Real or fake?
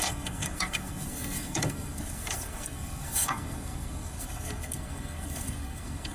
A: fake